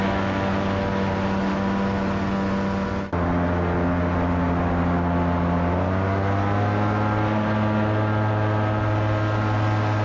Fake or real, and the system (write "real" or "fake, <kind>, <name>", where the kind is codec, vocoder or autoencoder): real